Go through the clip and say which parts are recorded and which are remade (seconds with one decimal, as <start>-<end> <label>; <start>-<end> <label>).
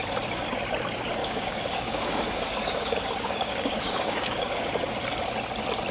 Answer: 0.0-1.2 recorded; 1.2-4.7 remade; 4.7-5.9 recorded